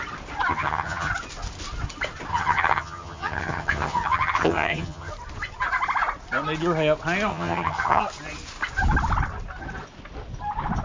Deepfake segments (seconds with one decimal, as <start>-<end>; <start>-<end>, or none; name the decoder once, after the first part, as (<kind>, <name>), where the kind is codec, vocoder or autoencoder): 0.5-1.1 (vocoder, HiFi-GAN); 2.3-5.1; 7.3-8.0